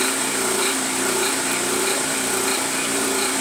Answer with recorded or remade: remade